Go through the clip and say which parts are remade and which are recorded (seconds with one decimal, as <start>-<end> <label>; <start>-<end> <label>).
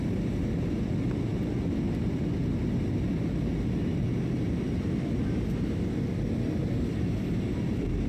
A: 0.0-8.1 recorded